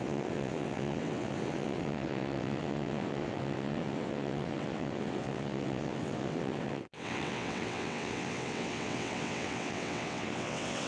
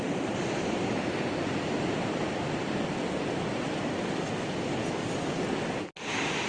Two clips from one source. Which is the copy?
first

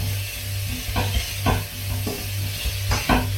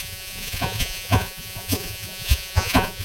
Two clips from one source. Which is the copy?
second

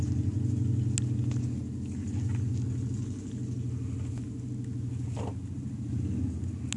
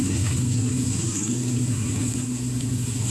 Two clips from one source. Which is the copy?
second